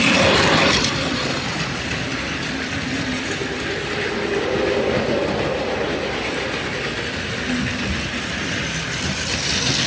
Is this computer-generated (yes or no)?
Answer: no